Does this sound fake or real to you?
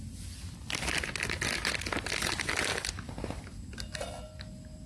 real